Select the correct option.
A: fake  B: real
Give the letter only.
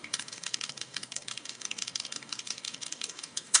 A